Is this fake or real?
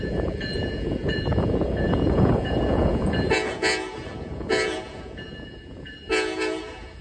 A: fake